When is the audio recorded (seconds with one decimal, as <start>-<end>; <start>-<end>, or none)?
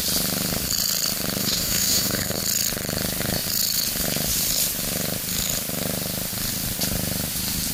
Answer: 0.0-1.4; 2.4-7.7